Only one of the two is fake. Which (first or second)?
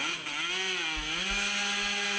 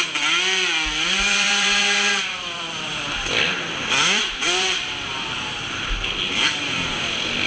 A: second